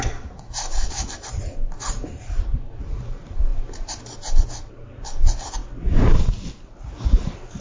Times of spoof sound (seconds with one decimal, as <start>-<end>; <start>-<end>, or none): none